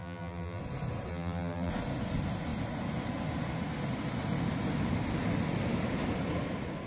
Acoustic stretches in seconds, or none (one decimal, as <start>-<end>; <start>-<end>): 0.6-1.1; 1.7-6.9

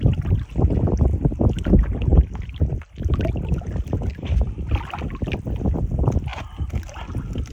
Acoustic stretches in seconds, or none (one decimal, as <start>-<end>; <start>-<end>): 0.0-7.5

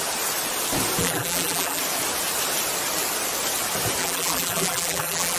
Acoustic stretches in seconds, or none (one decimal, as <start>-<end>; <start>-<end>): 0.0-1.0; 1.8-4.0

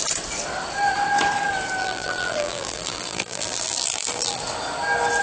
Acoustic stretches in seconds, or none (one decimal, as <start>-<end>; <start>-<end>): 0.0-1.8; 4.4-5.2

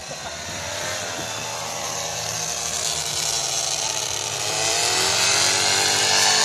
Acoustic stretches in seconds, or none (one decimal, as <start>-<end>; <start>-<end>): 2.3-3.1

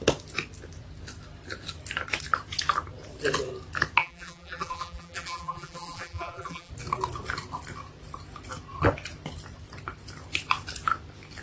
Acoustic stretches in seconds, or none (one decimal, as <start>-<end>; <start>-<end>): 0.0-4.0; 6.7-11.4

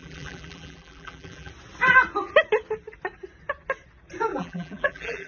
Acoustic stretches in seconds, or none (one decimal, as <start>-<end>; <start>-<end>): 1.5-4.3